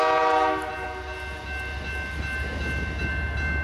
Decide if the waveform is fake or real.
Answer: real